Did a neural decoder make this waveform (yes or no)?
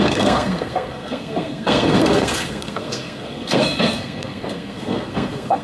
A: yes